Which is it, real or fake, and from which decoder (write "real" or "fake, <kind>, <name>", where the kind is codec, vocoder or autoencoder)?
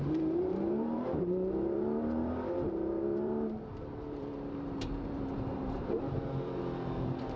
fake, vocoder, BigVGAN v2